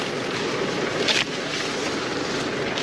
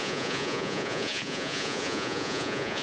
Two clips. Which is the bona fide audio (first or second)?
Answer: first